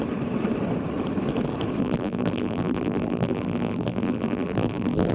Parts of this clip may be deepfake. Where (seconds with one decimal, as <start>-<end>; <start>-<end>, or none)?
1.8-5.1